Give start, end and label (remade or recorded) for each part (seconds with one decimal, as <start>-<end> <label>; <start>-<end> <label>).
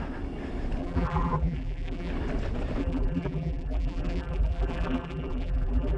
0.0-0.8 recorded; 0.8-2.1 remade; 2.1-2.8 recorded; 2.8-6.0 remade